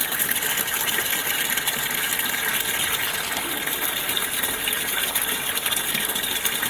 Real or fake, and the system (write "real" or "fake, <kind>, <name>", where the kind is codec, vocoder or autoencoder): real